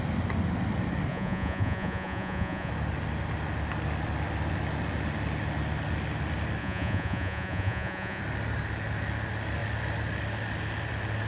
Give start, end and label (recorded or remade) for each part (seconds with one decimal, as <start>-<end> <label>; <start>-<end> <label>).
0.0-1.1 recorded; 1.1-2.7 remade; 2.7-6.6 recorded; 6.6-8.2 remade; 8.2-11.3 recorded